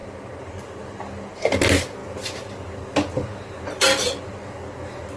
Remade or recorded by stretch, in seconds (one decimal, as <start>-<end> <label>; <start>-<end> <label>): 0.0-5.2 recorded

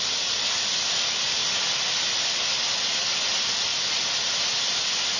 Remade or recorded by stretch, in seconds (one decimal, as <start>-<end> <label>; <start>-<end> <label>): 0.0-5.2 recorded

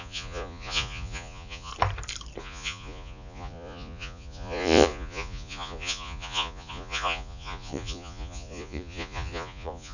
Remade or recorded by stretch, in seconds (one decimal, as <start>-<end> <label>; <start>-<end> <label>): 0.0-1.7 remade; 1.7-2.4 recorded; 2.4-9.9 remade

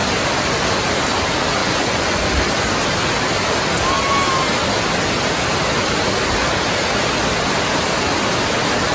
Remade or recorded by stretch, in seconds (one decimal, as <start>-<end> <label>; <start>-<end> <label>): 0.0-1.6 recorded; 1.6-2.2 remade; 2.2-8.9 recorded